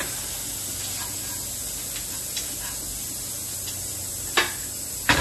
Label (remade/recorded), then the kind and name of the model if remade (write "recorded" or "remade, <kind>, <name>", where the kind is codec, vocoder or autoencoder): recorded